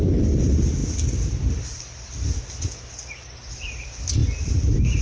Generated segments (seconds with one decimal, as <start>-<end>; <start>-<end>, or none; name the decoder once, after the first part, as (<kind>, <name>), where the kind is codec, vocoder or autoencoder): none